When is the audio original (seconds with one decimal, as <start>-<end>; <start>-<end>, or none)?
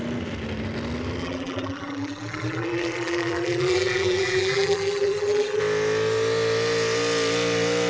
0.0-1.2; 5.6-7.9